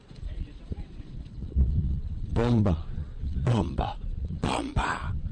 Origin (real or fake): fake